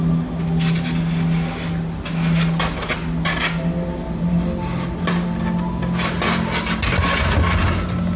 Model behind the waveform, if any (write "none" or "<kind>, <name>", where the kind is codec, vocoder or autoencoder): none